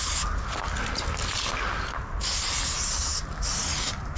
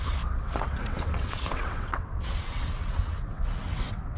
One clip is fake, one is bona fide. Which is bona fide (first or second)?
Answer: first